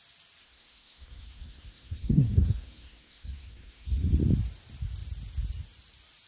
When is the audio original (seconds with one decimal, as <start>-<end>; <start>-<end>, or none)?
0.0-0.4; 4.2-6.3